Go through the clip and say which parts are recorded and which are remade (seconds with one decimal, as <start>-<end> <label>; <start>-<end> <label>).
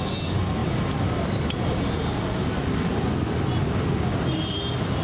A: 0.0-5.0 recorded